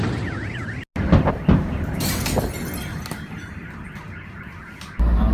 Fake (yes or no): no